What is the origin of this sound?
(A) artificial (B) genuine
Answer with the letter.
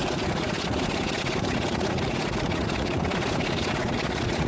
A